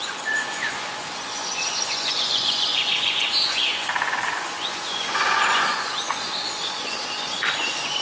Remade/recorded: remade